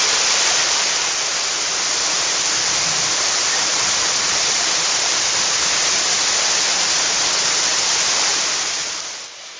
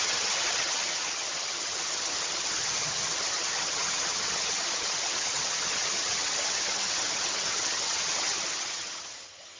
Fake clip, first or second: second